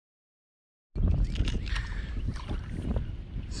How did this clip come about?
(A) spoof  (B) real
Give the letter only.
B